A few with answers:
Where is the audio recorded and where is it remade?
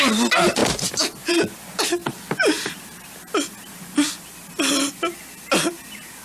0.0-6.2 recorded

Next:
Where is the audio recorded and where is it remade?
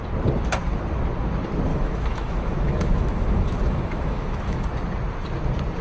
0.0-1.7 recorded; 1.7-4.7 remade; 4.7-5.8 recorded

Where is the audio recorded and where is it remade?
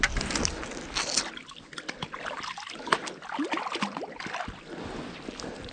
0.0-5.7 recorded